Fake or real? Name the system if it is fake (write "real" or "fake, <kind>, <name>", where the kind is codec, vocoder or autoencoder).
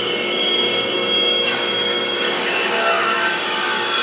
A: fake, codec, DAC